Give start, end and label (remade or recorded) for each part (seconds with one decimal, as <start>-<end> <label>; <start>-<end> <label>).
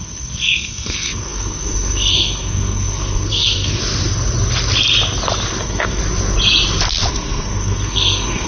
0.0-3.8 remade; 3.8-5.6 recorded; 5.6-6.0 remade; 6.0-7.1 recorded; 7.1-8.5 remade